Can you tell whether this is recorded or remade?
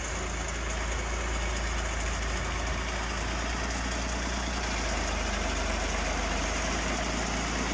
recorded